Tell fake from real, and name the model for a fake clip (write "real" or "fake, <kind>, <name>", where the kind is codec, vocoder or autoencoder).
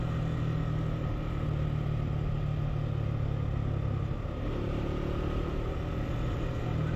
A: real